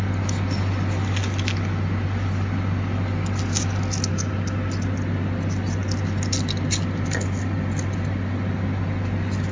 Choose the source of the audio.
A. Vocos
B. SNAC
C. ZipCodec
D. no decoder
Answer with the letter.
D